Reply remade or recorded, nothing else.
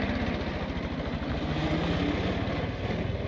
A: recorded